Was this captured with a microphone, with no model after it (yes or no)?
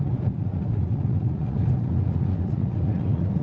no